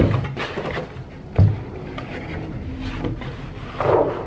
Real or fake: real